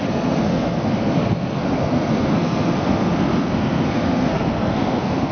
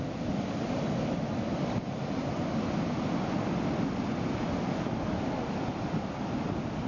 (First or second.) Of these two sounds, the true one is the second